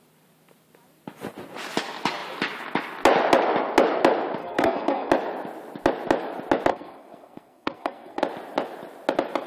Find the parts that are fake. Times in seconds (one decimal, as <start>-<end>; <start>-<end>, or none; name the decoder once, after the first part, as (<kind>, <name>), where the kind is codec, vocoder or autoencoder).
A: 4.4-5.1 (codec, SNAC); 6.7-8.2